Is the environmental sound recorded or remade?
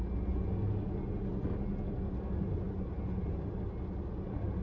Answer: recorded